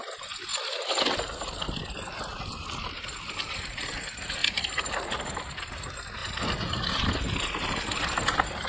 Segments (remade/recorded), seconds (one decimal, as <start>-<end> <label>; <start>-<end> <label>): 0.0-8.7 recorded